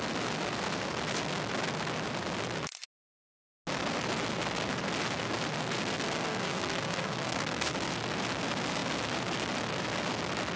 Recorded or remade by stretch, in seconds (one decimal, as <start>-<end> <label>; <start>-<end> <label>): 0.0-5.9 recorded; 5.9-7.9 remade; 7.9-10.6 recorded